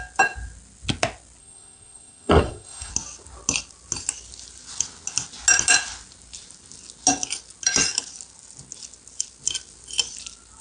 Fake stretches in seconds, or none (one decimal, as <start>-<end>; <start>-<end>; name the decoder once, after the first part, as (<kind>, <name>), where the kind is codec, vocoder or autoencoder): 1.4-2.9 (codec, SNAC)